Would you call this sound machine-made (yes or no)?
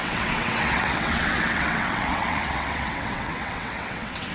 yes